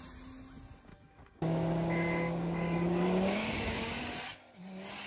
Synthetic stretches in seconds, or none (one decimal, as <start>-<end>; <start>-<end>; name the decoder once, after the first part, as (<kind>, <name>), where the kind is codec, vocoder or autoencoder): 0.9-4.0 (codec, DAC)

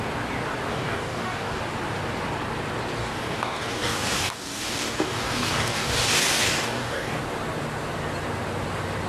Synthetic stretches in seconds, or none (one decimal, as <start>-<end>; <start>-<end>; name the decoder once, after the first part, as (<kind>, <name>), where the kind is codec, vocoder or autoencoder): 0.7-1.6 (codec, DAC); 3.0-7.2

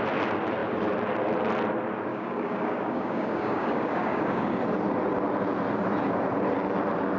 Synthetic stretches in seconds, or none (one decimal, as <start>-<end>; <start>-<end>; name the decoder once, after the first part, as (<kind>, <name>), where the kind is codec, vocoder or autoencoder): 2.1-4.6 (codec, DAC)

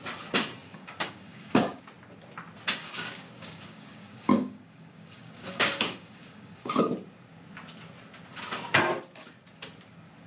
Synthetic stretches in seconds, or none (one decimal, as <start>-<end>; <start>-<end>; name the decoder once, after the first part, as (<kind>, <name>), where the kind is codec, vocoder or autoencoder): 0.6-1.8 (codec, DAC); 2.8-6.9

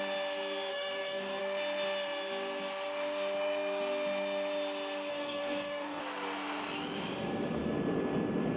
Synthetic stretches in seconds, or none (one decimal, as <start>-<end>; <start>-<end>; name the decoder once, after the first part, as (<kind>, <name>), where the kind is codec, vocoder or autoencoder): 0.7-1.4 (codec, DAC); 5.1-6.0